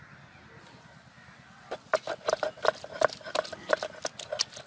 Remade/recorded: recorded